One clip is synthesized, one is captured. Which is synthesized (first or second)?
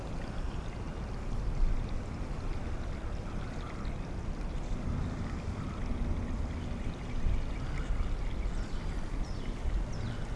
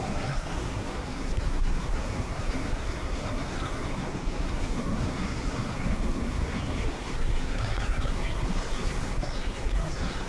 second